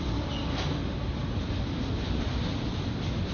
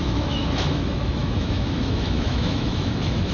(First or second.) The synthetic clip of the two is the second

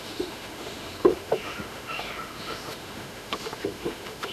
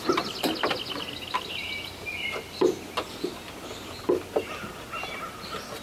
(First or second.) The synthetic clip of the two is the first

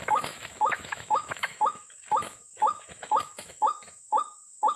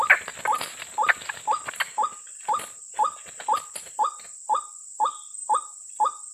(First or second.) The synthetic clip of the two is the first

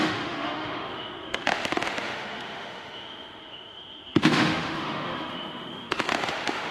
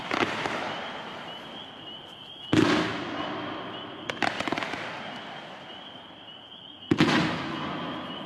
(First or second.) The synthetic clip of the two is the first